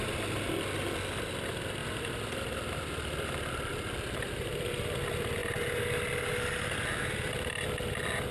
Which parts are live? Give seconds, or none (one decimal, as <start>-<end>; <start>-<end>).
0.0-8.3